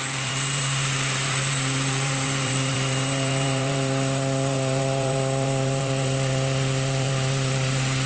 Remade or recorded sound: remade